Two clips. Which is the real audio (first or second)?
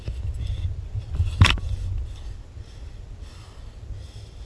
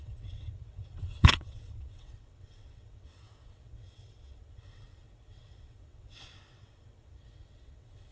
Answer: first